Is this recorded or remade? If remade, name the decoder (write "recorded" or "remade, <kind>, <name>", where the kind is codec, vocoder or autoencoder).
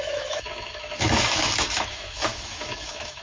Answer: remade, autoencoder, DAC-VAE